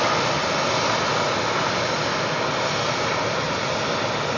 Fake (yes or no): no